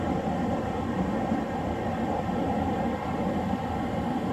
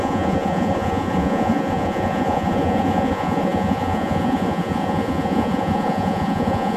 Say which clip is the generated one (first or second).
second